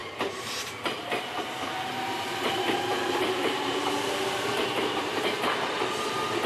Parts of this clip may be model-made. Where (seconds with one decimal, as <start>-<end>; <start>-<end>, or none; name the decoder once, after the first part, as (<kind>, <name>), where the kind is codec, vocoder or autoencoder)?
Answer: 0.0-1.4 (vocoder, BigVGAN v2); 2.9-4.7